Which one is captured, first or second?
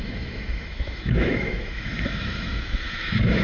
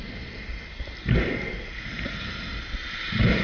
second